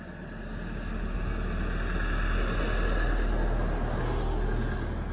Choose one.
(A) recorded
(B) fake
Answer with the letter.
A